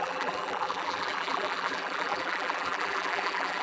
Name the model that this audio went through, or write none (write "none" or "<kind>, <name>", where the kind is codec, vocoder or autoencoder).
vocoder, BigVGAN v2